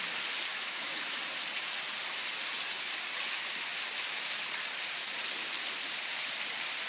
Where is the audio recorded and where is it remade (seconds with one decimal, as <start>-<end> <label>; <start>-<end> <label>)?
0.0-0.5 recorded; 0.5-1.2 remade; 1.2-6.9 recorded